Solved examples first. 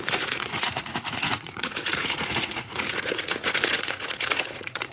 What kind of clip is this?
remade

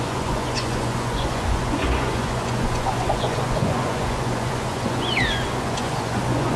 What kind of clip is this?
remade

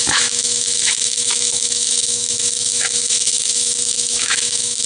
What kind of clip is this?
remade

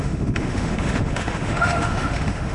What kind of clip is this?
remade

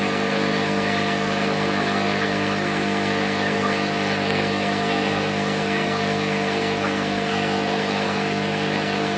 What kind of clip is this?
remade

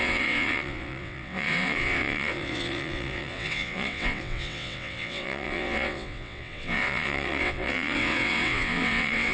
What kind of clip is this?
remade